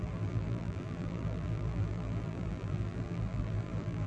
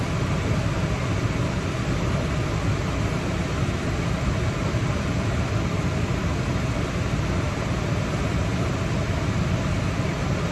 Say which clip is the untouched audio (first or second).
second